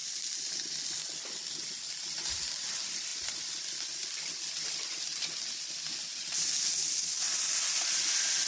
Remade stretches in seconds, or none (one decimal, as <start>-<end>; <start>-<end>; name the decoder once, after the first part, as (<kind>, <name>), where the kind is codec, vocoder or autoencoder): 1.9-7.1 (vocoder, BigVGAN v2)